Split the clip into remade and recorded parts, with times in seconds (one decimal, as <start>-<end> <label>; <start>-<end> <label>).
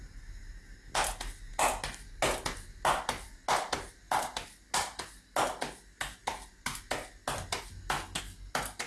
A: 0.0-8.9 recorded